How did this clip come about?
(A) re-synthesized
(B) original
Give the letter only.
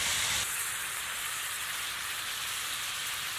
A